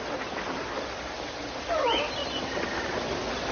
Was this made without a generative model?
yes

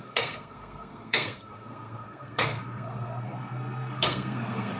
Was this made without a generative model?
no